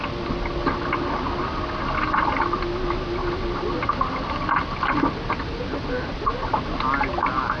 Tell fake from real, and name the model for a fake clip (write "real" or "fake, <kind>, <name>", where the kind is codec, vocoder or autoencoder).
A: real